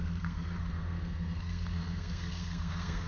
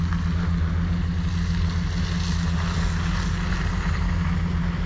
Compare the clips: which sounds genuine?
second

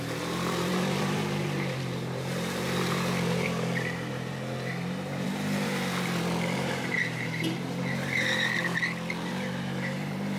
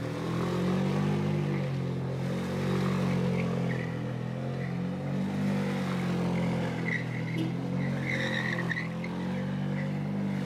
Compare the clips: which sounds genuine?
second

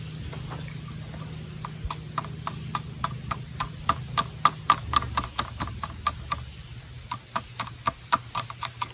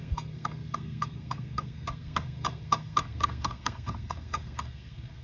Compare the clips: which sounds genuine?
first